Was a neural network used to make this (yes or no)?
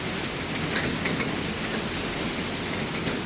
no